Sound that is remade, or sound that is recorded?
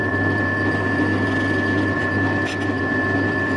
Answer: recorded